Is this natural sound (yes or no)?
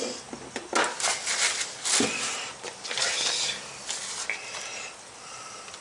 yes